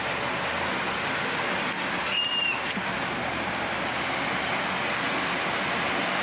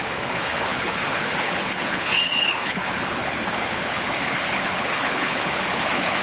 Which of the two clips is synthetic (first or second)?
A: second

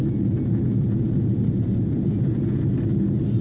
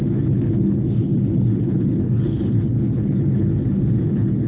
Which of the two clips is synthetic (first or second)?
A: second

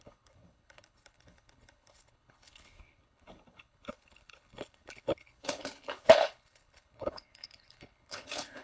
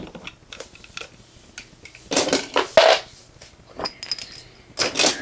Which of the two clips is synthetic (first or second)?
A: first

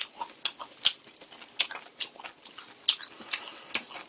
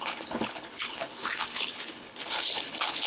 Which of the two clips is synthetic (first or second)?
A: second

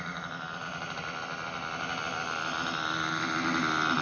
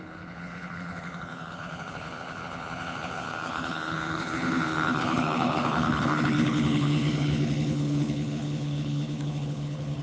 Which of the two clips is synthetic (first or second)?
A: second